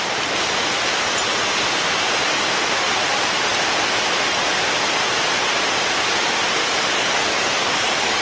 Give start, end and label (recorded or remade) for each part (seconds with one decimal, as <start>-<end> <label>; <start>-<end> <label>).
0.0-6.6 recorded; 6.6-8.2 remade